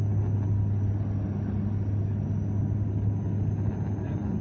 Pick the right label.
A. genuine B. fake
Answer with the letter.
A